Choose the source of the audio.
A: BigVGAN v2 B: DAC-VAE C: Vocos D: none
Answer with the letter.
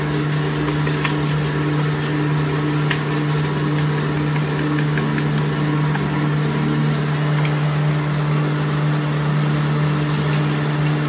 D